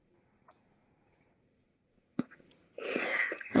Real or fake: fake